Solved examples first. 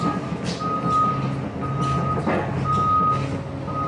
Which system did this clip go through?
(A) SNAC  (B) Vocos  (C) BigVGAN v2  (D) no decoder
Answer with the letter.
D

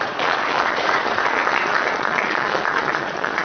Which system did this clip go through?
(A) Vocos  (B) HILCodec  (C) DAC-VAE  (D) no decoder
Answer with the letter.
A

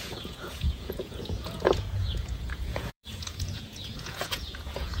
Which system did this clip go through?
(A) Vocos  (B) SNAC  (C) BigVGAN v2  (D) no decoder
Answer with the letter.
A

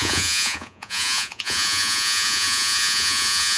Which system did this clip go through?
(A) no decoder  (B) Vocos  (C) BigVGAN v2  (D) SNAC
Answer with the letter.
B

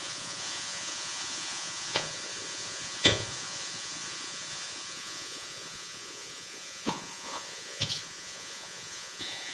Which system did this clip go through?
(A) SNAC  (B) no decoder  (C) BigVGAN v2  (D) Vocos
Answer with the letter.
D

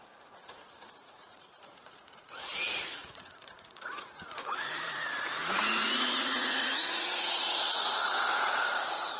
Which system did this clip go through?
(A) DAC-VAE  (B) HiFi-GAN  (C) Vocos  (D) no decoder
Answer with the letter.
C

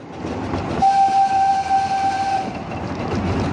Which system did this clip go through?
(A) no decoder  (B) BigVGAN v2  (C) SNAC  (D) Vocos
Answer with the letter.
A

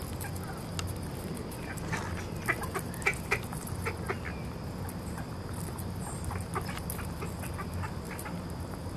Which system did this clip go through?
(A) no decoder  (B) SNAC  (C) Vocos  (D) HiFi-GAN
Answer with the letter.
A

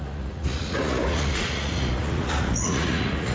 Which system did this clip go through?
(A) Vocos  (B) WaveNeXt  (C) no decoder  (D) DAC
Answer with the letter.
A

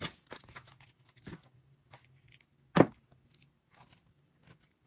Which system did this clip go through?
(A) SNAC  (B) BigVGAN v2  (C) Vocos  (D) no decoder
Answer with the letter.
D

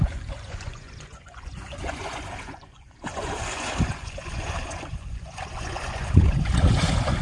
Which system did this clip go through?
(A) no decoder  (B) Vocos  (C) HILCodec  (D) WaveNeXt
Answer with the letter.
B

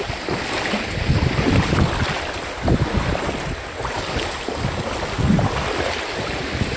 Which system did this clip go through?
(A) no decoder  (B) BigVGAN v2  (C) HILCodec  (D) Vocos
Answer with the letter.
A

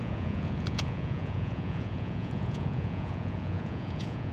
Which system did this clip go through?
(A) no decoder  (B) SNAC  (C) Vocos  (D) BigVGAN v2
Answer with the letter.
C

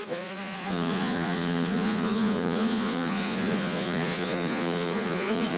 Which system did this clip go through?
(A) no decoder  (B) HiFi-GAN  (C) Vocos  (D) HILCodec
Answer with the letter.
C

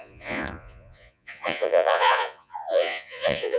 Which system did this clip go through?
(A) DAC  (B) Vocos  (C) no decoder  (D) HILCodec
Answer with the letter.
B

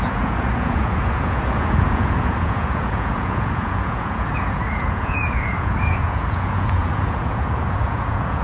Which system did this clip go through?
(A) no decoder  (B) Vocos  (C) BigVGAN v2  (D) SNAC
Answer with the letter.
B